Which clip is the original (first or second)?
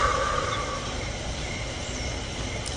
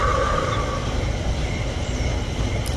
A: first